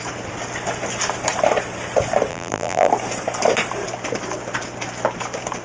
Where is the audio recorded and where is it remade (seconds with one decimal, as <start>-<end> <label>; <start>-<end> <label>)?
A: 0.0-2.3 recorded; 2.3-2.9 remade; 2.9-5.6 recorded